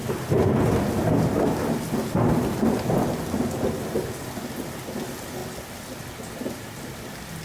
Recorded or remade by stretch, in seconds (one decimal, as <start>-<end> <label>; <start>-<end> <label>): 0.0-7.4 recorded